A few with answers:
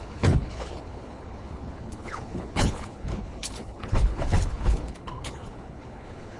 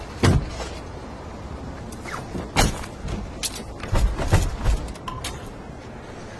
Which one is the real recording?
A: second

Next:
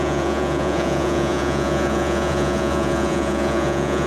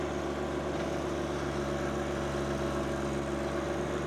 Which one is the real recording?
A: second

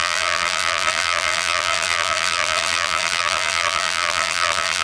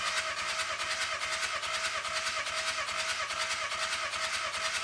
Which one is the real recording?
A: second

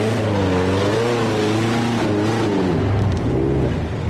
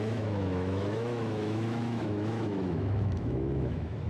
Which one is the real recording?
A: first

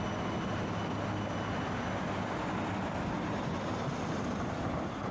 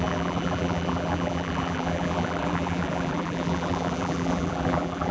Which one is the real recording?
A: first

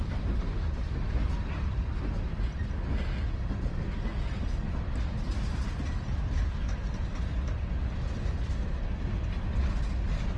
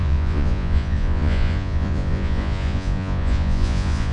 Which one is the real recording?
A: first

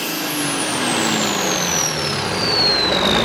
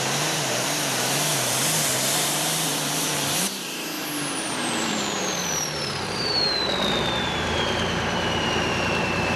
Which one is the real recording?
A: first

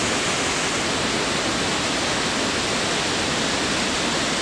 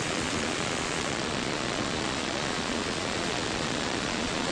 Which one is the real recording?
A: first